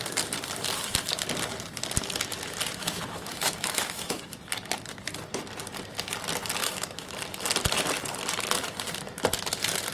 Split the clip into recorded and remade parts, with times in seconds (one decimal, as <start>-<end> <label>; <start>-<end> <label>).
0.0-2.8 recorded; 2.8-4.2 remade; 4.2-6.6 recorded; 6.6-7.1 remade; 7.1-9.9 recorded